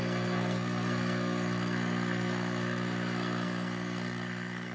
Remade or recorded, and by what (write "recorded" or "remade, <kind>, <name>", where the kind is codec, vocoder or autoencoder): remade, codec, SNAC